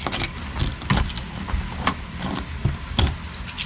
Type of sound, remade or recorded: recorded